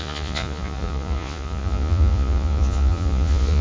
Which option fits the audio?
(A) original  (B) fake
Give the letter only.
B